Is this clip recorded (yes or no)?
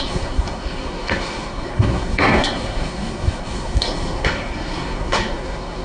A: no